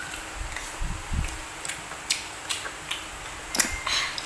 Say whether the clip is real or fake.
real